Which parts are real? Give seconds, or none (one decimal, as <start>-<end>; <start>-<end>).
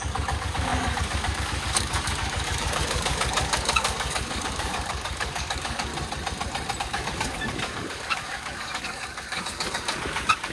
5.9-6.8